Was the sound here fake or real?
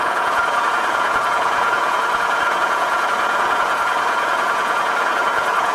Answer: fake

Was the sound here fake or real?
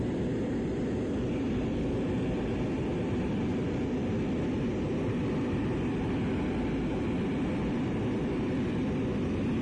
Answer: real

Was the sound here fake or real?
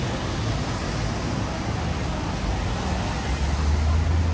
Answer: real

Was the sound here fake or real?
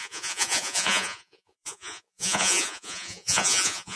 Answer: fake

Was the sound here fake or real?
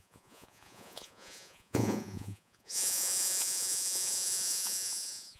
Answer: fake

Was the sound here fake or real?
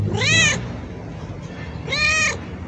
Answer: real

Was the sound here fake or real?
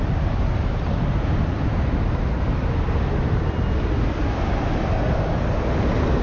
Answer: real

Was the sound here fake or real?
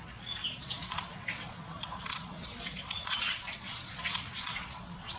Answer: fake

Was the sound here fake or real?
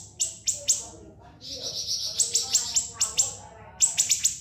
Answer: real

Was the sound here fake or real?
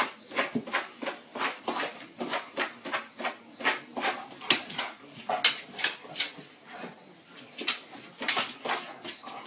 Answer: real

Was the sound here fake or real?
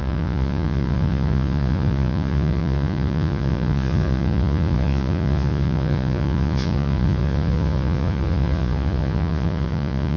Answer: fake